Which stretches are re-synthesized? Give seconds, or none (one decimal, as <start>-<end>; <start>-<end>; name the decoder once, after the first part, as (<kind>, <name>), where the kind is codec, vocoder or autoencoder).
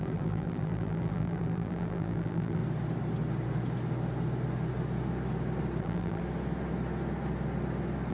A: 0.0-2.6 (vocoder, BigVGAN v2); 5.8-6.2